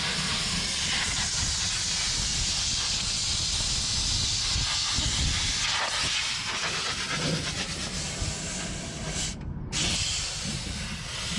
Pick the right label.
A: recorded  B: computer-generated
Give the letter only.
A